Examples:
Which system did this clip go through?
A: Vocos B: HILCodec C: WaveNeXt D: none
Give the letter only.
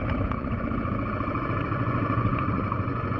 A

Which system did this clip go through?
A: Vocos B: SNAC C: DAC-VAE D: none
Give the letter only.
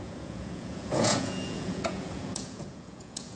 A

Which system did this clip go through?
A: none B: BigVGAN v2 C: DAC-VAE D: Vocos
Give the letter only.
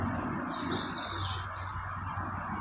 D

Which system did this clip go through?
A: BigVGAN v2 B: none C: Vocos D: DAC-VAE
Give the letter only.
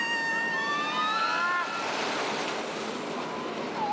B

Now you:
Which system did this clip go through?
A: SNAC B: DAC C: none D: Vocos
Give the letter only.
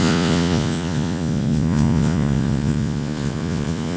D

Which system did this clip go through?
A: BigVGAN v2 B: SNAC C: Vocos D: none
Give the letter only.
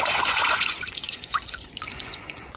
C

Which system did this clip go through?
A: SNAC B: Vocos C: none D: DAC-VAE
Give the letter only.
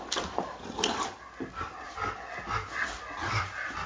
C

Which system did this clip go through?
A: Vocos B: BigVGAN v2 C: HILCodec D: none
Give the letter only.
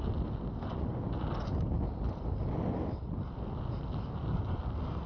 D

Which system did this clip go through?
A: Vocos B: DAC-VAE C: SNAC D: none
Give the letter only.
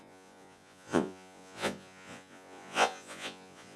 A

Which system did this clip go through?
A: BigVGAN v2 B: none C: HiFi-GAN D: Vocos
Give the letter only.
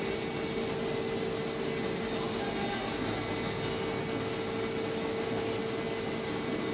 B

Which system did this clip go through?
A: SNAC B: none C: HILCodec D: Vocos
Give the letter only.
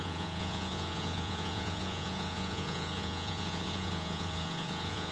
D